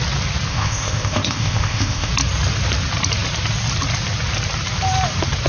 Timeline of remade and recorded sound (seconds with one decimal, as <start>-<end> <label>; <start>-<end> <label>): 0.0-0.5 recorded; 0.5-2.1 remade; 2.1-5.5 recorded